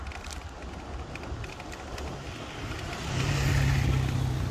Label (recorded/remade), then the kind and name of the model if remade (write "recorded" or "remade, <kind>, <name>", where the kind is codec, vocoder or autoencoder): recorded